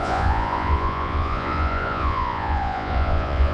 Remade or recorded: remade